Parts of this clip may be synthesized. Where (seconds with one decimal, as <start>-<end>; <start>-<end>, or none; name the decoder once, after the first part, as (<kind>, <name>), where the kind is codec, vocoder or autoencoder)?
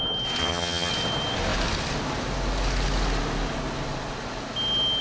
0.4-0.9 (vocoder, HiFi-GAN)